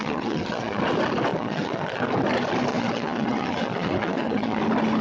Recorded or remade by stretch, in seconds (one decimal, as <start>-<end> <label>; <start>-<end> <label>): 0.0-0.8 remade; 0.8-1.3 recorded; 1.3-2.0 remade; 2.0-2.7 recorded; 2.7-4.6 remade; 4.6-5.0 recorded

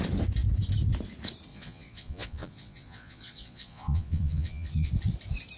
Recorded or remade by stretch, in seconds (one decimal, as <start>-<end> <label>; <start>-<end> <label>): 0.0-1.5 recorded; 1.5-4.9 remade; 4.9-5.6 recorded

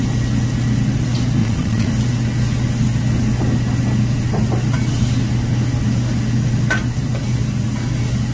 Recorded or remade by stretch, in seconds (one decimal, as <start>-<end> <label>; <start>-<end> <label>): 0.0-1.4 recorded; 1.4-1.9 remade; 1.9-8.3 recorded

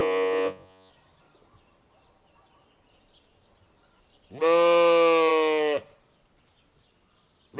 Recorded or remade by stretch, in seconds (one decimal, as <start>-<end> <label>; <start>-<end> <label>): 0.0-0.9 remade; 0.9-7.6 recorded

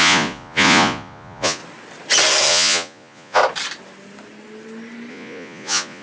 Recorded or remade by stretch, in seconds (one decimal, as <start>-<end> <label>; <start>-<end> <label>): 0.0-1.6 remade; 1.6-2.5 recorded; 2.5-3.4 remade; 3.4-5.1 recorded; 5.1-6.0 remade